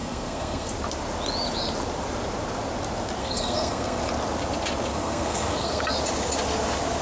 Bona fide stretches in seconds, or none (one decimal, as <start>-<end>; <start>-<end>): 0.7-3.2; 4.0-4.9; 5.8-7.0